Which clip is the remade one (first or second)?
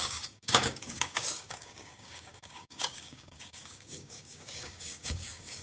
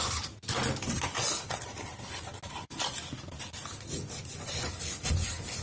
first